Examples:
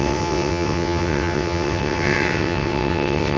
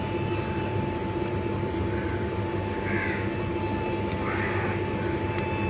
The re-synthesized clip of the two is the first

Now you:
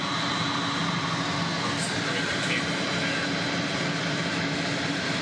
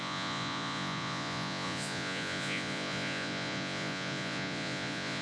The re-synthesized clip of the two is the second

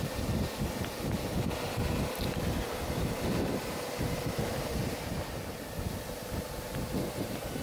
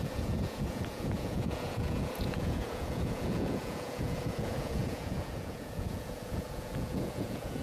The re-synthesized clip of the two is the second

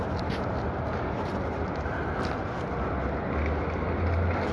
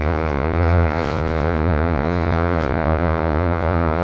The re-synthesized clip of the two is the second